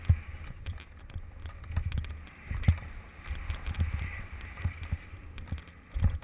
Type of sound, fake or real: real